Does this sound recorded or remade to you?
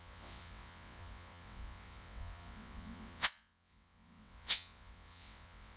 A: remade